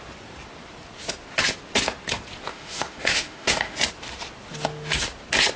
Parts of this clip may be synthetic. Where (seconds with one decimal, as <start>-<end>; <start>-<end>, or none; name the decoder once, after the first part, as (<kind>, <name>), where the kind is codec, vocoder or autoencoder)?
2.5-3.8 (autoencoder, DAC-VAE)